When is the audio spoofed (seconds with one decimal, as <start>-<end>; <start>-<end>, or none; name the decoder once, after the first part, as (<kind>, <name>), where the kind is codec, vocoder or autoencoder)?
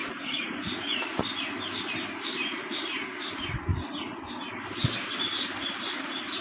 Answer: 0.0-1.2 (vocoder, Vocos); 3.7-4.3